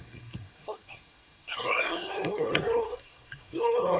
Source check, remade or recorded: remade